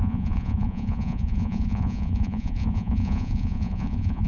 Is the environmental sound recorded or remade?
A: remade